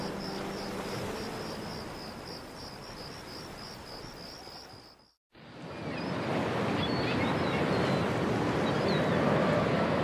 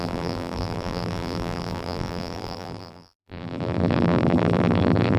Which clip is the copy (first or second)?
second